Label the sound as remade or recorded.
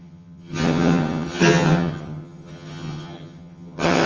remade